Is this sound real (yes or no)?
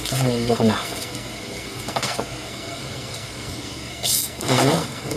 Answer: no